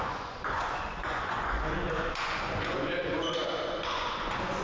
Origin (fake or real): fake